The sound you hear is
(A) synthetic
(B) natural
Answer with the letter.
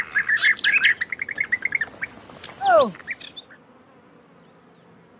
B